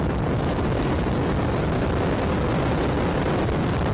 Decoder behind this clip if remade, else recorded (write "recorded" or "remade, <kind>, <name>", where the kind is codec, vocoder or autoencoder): remade, vocoder, BigVGAN v2